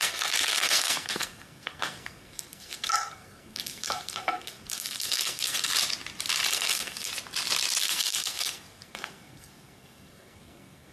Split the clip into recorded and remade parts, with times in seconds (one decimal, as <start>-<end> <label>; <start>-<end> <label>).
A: 0.0-5.7 remade; 5.7-6.5 recorded; 6.5-7.1 remade; 7.1-7.8 recorded; 7.8-10.9 remade